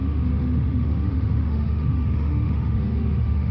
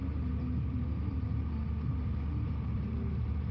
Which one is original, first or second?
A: second